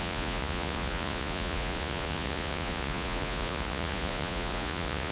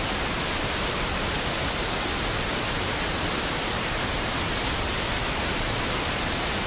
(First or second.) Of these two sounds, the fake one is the first